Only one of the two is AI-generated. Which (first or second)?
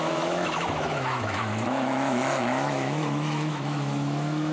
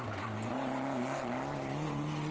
first